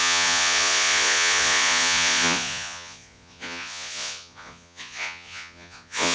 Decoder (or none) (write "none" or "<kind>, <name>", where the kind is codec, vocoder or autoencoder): vocoder, Vocos